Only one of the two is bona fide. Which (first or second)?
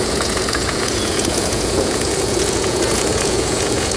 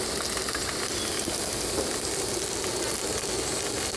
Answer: second